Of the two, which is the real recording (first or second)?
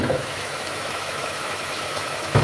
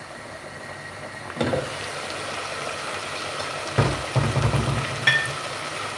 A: second